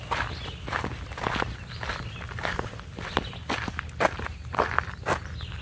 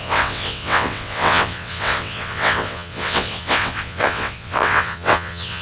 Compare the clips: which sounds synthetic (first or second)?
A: second